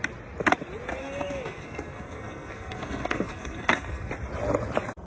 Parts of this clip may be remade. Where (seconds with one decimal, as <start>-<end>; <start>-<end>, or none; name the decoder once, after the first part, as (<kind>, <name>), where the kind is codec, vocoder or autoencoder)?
1.0-4.1 (codec, SNAC)